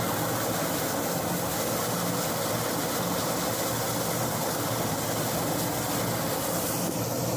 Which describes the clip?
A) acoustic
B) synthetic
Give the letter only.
A